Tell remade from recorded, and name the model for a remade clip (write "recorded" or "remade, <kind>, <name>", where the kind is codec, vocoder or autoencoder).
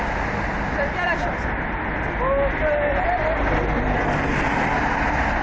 recorded